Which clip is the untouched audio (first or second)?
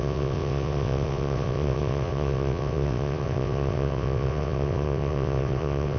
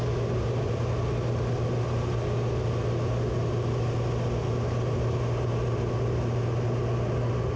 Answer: second